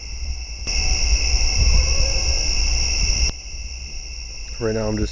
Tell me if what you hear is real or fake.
real